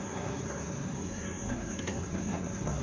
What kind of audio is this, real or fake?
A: fake